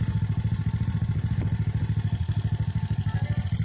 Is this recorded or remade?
recorded